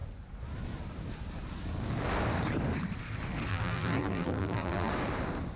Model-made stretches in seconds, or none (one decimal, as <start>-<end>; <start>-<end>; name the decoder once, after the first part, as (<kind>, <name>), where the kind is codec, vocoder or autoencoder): 3.5-4.9 (vocoder, BigVGAN v2)